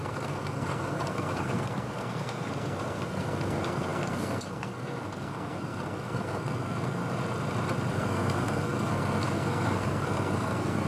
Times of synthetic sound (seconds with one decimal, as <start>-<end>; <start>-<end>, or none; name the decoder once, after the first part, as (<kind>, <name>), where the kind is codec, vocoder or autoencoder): 0.0-7.0 (codec, SNAC); 7.9-10.9